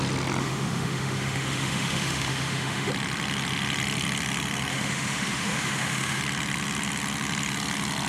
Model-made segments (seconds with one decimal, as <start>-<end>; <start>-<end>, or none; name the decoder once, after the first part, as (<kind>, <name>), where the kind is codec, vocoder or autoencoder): 0.4-2.9 (autoencoder, DAC-VAE); 4.7-6.2